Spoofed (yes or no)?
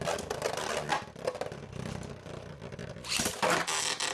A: no